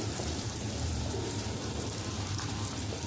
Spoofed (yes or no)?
yes